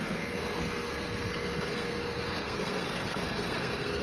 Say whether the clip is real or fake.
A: fake